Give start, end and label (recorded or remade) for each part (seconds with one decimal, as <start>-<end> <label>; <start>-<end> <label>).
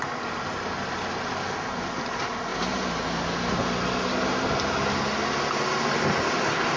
0.0-6.8 recorded